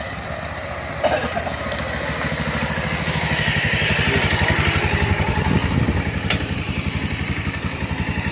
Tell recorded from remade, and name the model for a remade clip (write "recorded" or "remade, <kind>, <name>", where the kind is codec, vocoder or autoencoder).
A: recorded